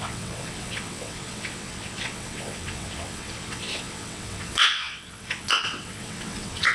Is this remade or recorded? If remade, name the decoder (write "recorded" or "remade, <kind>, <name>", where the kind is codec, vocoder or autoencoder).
remade, vocoder, WaveNeXt